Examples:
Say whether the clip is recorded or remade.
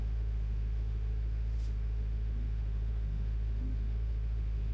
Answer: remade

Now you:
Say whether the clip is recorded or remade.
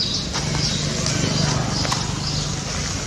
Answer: recorded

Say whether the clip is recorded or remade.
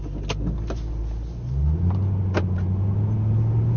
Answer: recorded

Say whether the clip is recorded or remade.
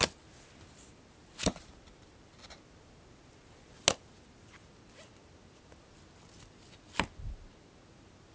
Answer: recorded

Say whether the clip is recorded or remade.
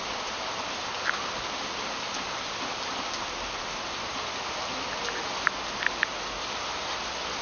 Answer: recorded